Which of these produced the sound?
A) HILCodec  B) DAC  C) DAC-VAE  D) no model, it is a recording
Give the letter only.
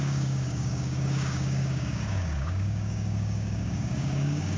B